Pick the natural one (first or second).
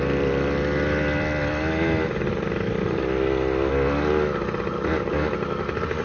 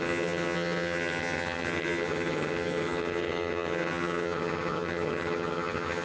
first